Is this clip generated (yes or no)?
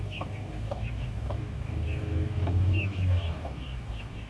yes